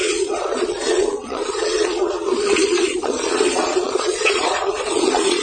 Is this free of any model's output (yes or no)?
no